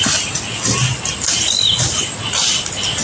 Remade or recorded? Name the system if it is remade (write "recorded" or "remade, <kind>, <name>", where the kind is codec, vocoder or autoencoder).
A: recorded